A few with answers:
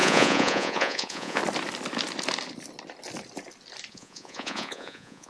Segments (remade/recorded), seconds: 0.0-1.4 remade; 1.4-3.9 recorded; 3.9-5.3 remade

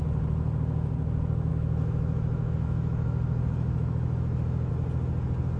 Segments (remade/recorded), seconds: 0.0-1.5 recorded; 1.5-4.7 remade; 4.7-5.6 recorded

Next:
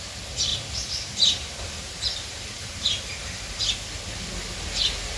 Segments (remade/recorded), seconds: 0.0-0.5 recorded; 0.5-3.6 remade; 3.6-5.2 recorded

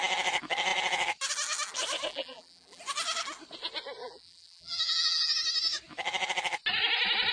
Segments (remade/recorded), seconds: 0.0-2.1 recorded; 2.1-2.8 remade; 2.8-4.0 recorded; 4.0-5.3 remade; 5.3-7.3 recorded